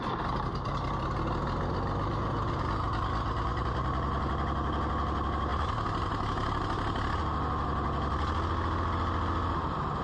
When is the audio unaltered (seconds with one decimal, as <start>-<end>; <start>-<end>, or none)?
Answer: 0.0-10.0